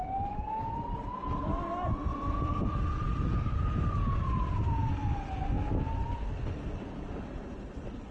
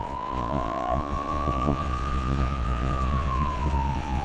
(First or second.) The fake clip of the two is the second